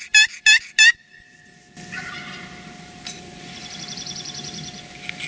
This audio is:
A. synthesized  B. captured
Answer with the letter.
B